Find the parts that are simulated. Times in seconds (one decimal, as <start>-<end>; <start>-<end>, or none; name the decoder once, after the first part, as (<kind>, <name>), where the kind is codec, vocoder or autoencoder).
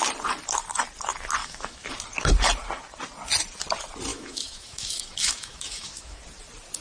1.4-1.9 (autoencoder, DAC-VAE); 4.1-6.2